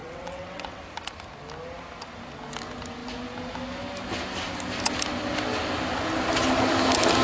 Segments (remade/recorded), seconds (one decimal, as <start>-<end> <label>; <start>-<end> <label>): 0.0-0.8 remade; 0.8-7.2 recorded